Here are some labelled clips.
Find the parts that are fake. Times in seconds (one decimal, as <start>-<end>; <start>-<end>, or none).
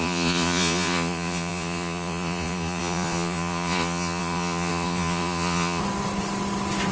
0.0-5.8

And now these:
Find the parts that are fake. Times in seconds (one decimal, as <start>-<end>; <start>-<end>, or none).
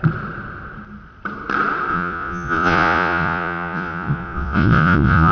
1.9-5.3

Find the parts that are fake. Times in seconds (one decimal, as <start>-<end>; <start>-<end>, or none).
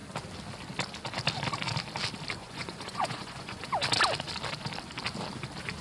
2.4-3.7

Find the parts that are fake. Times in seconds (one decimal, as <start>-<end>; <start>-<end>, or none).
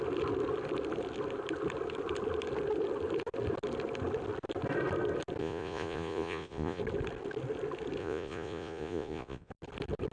5.4-6.8; 8.0-9.5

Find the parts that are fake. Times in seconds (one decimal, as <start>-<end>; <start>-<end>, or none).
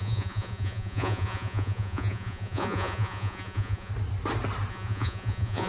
0.0-3.9; 4.7-5.7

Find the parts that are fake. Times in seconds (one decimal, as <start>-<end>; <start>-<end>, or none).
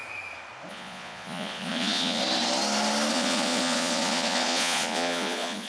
0.7-2.2; 3.1-5.7